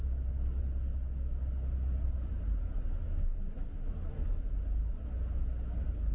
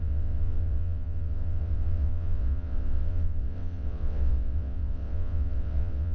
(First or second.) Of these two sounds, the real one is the first